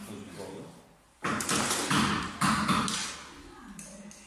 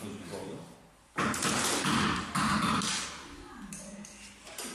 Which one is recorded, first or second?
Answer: first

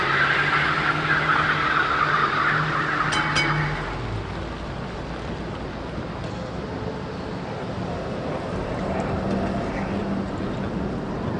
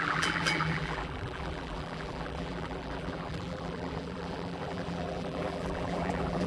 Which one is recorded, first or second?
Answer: first